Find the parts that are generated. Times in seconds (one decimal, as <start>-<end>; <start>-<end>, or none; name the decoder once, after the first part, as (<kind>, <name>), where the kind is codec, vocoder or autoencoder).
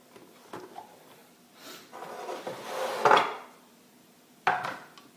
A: none